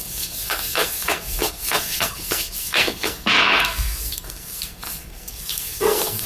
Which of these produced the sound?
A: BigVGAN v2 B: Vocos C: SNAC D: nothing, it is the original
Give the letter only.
C